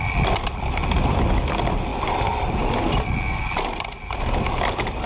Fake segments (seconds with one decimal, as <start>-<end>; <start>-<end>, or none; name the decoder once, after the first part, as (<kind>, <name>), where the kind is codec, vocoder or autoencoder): none